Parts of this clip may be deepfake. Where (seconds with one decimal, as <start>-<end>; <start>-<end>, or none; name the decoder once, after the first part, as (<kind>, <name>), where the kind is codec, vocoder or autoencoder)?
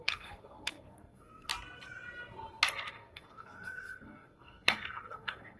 0.0-1.5 (codec, SNAC); 2.9-5.6